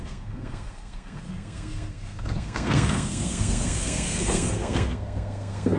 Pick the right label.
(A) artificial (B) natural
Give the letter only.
A